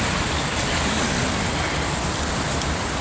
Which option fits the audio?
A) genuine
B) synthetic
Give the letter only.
A